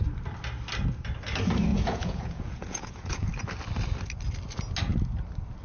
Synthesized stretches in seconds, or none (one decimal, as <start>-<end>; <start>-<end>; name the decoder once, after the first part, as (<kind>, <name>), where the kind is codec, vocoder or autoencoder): 1.7-3.3 (vocoder, Vocos)